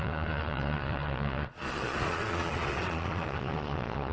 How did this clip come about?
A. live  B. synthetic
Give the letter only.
B